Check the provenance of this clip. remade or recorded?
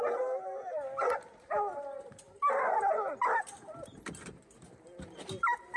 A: recorded